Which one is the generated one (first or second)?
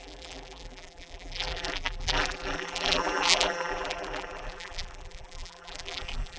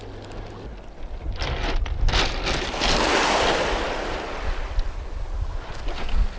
first